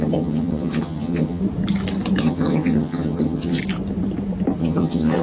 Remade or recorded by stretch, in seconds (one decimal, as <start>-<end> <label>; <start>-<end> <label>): 0.0-1.4 remade; 1.4-2.2 recorded; 2.2-3.6 remade; 3.6-4.6 recorded; 4.6-5.2 remade